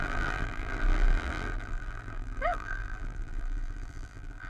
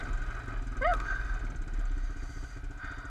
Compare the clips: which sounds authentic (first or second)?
second